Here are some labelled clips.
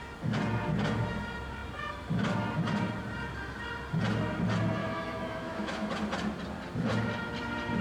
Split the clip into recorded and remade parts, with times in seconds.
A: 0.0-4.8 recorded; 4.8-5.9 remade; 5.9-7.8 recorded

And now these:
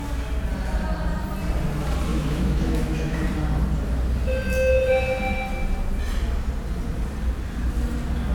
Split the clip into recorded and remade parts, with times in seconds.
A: 0.0-2.1 recorded; 2.1-3.2 remade; 3.2-8.3 recorded

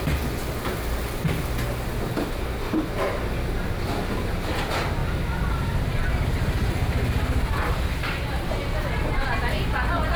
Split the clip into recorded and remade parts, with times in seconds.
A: 0.0-10.2 recorded

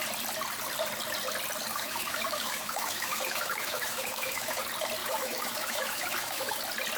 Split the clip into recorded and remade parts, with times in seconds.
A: 0.0-1.7 recorded; 1.7-4.6 remade; 4.6-5.0 recorded; 5.0-6.6 remade; 6.6-7.0 recorded